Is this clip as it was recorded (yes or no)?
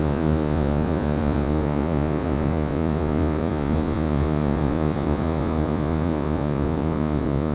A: no